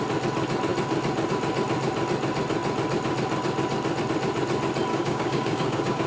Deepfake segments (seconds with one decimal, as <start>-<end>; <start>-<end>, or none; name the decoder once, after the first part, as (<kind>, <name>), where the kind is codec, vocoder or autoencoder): 4.9-6.1 (codec, DAC)